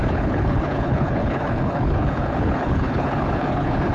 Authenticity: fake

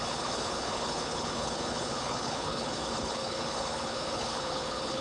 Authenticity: fake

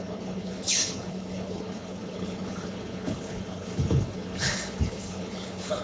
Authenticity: fake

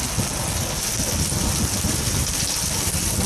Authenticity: real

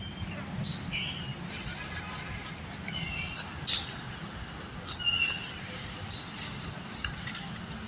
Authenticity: real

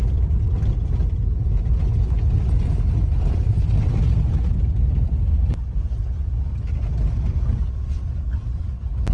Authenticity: real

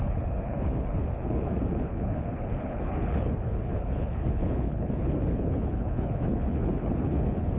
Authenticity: fake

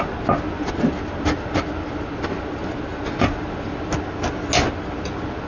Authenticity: real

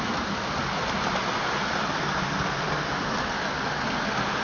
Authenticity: real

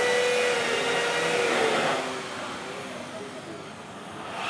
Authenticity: real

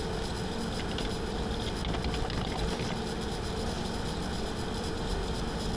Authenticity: real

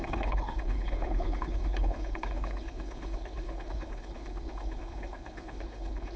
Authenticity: fake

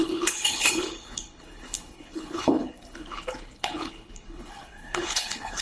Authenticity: fake